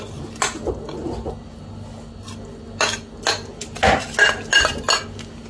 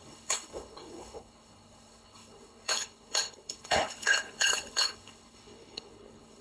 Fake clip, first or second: second